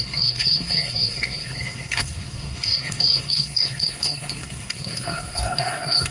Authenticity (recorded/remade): remade